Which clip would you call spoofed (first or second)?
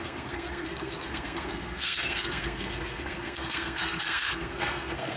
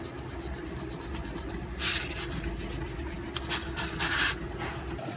first